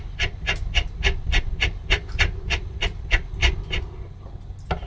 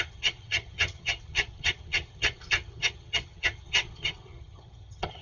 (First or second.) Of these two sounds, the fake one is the second